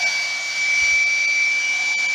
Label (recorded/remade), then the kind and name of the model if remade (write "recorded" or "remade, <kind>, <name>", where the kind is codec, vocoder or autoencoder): recorded